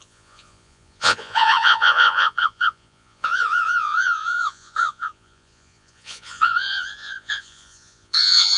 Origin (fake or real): fake